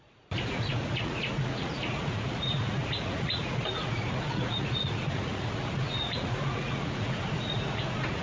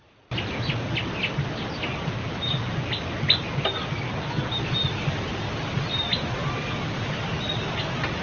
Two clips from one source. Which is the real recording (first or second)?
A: second